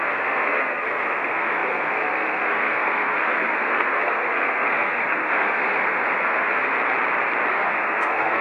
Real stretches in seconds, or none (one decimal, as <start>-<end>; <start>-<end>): 6.7-7.5